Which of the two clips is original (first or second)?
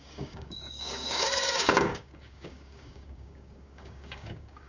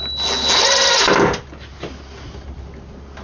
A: second